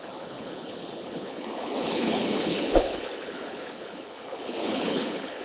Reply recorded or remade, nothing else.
remade